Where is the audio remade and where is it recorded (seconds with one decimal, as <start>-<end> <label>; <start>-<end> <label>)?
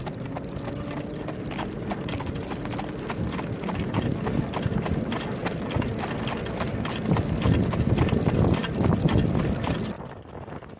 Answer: 0.0-10.8 recorded